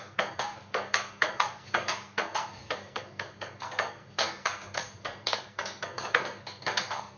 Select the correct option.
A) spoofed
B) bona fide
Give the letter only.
A